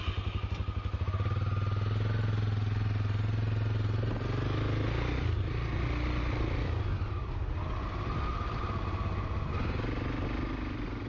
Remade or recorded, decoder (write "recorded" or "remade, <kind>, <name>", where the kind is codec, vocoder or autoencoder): recorded